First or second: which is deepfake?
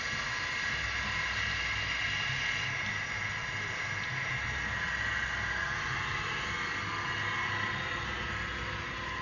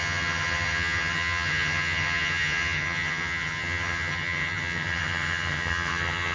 second